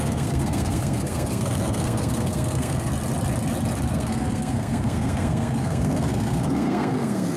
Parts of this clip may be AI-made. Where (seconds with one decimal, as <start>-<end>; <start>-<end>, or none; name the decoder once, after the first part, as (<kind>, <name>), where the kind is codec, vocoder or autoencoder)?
0.0-2.9 (codec, SNAC); 3.9-7.4